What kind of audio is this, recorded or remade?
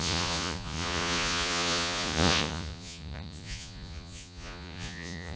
remade